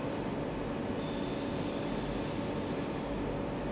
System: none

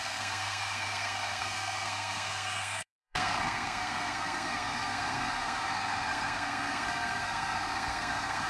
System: codec, SNAC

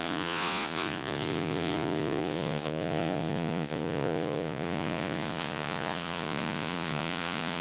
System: vocoder, Vocos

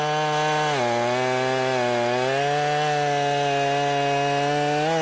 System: none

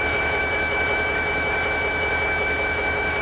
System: autoencoder, DAC-VAE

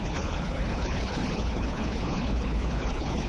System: codec, HILCodec